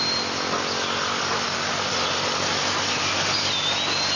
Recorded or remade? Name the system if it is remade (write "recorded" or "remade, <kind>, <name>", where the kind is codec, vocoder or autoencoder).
recorded